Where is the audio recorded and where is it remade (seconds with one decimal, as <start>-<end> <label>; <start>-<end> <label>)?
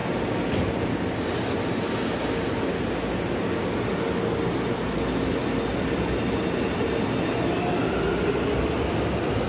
0.0-9.5 recorded